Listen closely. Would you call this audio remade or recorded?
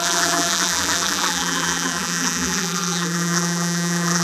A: remade